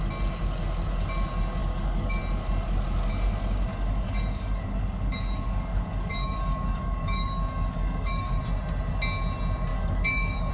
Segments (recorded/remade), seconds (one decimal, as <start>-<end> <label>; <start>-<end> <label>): 0.0-1.6 recorded; 1.6-2.2 remade; 2.2-3.7 recorded; 3.7-8.4 remade; 8.4-9.7 recorded; 9.7-10.5 remade